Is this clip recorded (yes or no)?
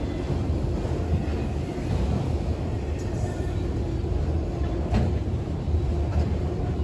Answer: yes